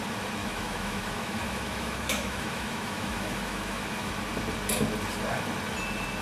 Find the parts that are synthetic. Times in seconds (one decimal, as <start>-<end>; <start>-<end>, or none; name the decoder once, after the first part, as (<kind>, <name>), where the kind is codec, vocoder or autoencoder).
0.4-4.1 (autoencoder, DAC-VAE)

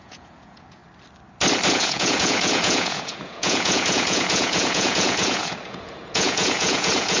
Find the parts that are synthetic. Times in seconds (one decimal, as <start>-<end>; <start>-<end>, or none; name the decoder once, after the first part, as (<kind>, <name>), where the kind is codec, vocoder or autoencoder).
0.0-0.8 (vocoder, Vocos); 1.7-7.2

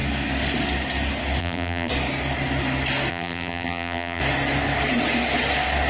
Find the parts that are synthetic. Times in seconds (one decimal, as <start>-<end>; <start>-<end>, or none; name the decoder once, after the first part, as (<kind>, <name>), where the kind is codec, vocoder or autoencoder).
1.4-1.9 (vocoder, BigVGAN v2); 3.1-4.2

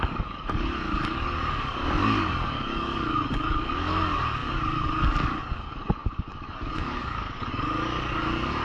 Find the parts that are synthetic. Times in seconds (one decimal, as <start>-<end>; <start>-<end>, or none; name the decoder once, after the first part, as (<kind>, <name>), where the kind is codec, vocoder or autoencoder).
0.0-8.6 (codec, DAC)

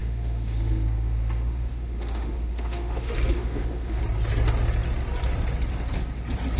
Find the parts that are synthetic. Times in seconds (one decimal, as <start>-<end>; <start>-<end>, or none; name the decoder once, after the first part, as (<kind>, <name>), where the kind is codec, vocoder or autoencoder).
0.0-4.0 (autoencoder, DAC-VAE)

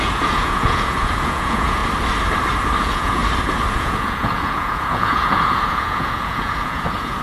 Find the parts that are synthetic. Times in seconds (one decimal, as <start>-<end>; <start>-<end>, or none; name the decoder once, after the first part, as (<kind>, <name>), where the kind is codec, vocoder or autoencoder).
0.0-1.8 (vocoder, Vocos); 2.8-3.2; 3.7-7.2